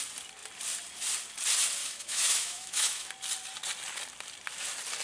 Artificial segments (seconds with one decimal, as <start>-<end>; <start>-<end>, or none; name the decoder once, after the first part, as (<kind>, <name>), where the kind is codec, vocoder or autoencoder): 1.8-3.1 (autoencoder, DAC-VAE)